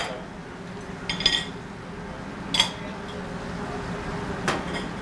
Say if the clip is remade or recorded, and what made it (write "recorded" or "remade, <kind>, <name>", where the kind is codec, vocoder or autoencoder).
recorded